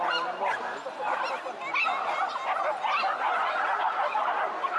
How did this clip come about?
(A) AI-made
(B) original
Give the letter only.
B